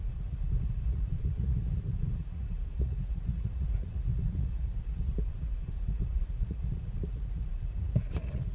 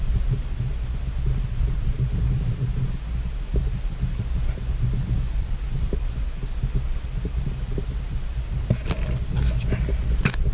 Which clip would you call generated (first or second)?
first